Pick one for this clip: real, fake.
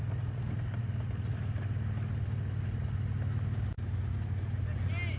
real